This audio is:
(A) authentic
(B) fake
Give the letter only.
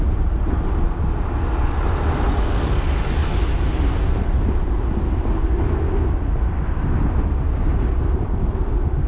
A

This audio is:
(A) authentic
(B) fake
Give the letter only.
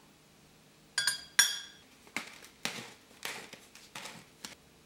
A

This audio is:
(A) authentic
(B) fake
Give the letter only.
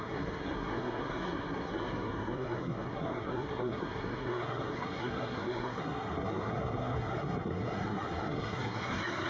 B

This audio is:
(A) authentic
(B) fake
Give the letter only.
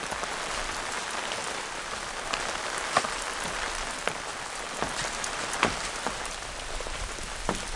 A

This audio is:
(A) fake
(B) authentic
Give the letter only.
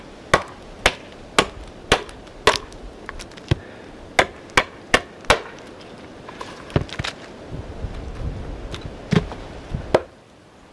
B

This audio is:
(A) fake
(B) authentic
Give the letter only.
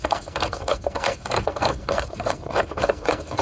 A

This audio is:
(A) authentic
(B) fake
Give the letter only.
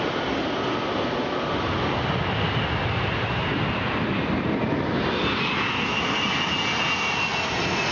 A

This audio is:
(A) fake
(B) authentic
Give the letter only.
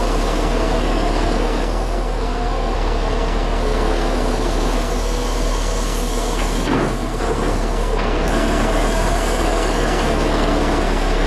A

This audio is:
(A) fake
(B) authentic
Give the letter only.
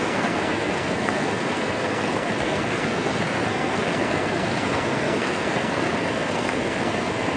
A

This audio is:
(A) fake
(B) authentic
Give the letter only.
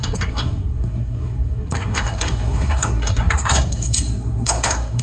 A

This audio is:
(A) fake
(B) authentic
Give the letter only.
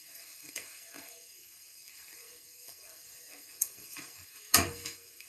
A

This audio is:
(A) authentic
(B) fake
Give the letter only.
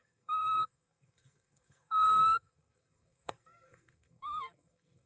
B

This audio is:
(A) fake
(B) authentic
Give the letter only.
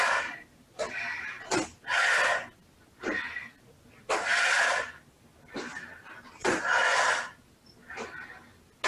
B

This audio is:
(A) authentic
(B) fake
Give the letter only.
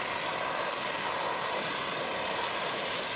A